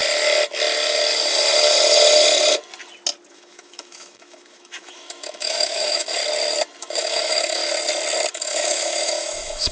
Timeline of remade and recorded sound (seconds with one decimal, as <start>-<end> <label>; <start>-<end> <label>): 0.0-3.3 recorded; 3.3-6.2 remade; 6.2-6.8 recorded; 6.8-7.6 remade; 7.6-8.3 recorded; 8.3-9.7 remade